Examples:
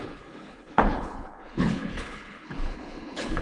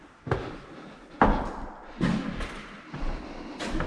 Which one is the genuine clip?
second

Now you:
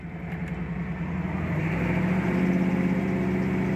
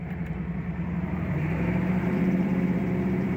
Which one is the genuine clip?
first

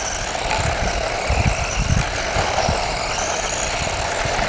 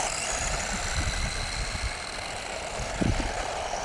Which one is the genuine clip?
first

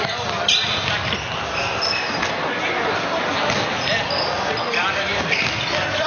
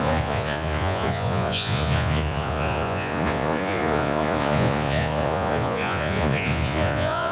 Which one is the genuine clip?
first